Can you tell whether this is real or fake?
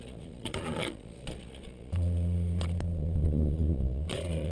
fake